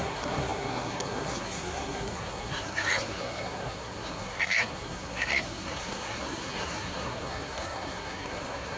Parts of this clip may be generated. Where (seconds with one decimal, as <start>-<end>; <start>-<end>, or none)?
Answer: 0.0-8.8